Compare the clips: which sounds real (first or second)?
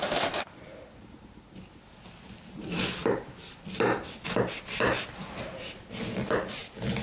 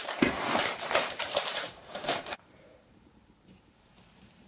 first